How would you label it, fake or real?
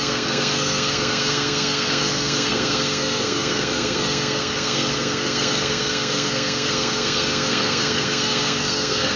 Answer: fake